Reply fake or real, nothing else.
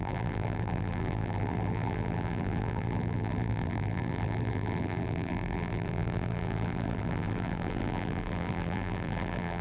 fake